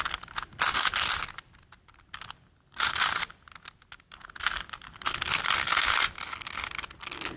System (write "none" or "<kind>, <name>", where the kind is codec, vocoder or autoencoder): none